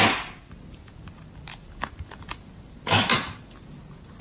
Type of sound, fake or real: real